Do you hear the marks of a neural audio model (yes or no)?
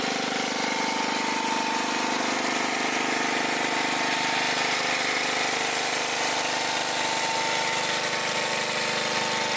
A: no